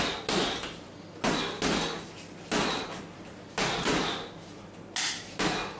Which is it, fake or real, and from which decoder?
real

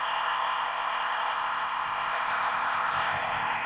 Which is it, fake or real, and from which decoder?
fake, codec, ZipCodec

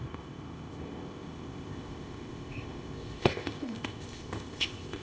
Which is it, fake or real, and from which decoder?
fake, codec, ZipCodec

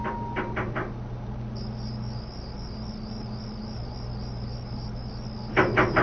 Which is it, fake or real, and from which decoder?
real